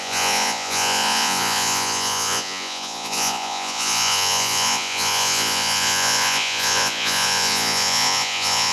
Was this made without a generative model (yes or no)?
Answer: no